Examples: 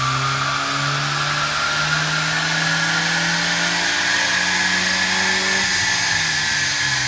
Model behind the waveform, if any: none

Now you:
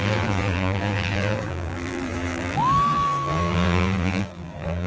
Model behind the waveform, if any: vocoder, BigVGAN v2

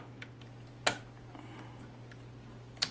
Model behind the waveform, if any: none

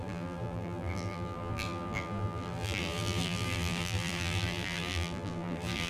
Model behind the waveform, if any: vocoder, BigVGAN v2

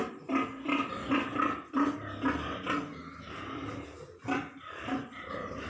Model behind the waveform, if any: none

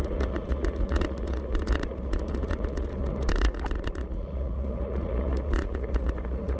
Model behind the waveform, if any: vocoder, Vocos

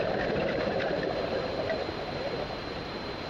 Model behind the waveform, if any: vocoder, BigVGAN v2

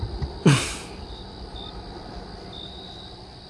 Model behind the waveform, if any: none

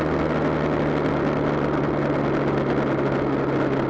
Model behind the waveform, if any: none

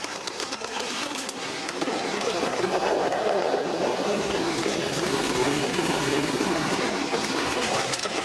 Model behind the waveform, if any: codec, SNAC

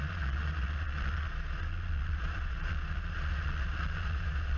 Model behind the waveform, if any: vocoder, Vocos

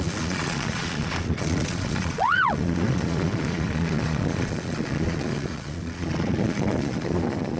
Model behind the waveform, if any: vocoder, Vocos